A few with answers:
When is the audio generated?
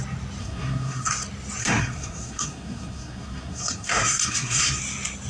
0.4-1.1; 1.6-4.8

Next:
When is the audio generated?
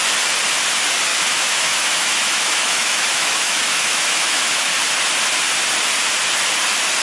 1.1-4.7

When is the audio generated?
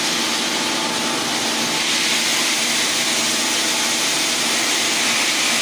2.3-4.4